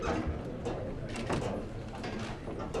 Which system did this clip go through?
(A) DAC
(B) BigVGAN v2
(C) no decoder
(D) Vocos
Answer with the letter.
C